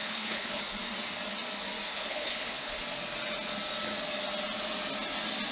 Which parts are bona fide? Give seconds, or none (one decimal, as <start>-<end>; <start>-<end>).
0.6-1.9; 2.8-5.5